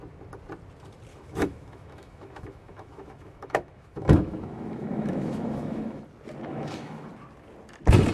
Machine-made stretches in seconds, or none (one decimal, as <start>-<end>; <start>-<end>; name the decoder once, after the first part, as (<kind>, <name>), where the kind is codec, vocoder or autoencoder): 1.1-6.0 (autoencoder, DAC-VAE); 6.5-7.1